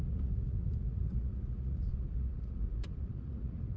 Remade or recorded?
remade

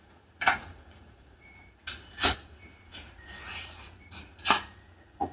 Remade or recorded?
remade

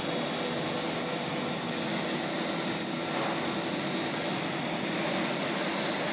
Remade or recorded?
recorded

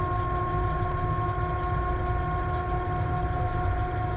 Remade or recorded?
recorded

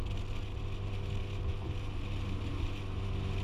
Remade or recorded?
recorded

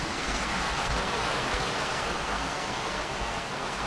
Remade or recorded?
remade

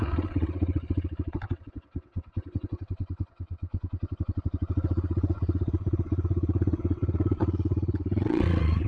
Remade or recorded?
remade